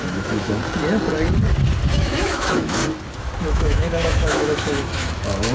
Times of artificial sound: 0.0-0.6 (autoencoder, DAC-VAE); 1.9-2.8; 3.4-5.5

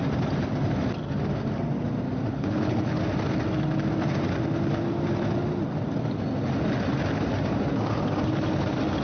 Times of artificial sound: 2.3-3.0 (codec, HILCodec)